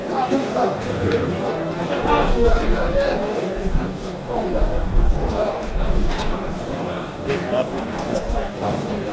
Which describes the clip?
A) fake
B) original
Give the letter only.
A